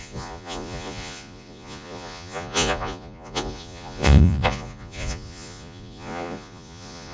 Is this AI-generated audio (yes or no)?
yes